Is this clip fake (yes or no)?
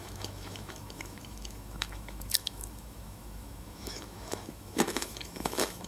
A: yes